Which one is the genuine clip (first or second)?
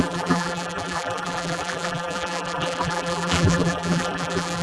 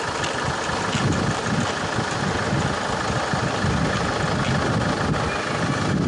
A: second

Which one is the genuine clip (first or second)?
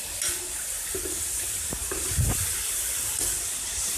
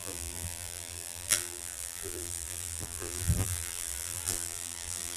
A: first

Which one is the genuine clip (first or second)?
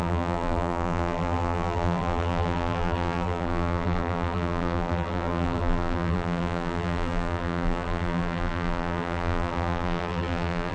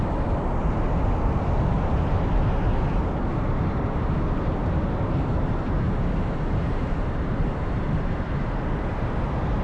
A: second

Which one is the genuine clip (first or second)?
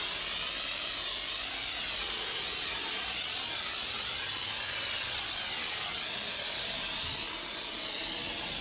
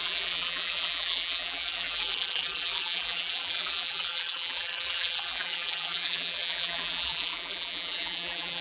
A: first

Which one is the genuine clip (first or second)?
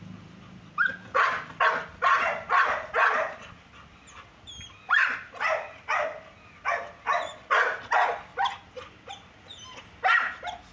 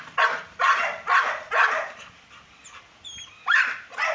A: first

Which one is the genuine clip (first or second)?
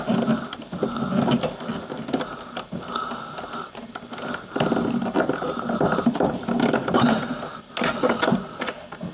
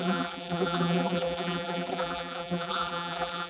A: first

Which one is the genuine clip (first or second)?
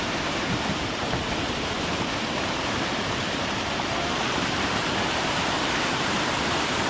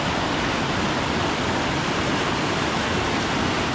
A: second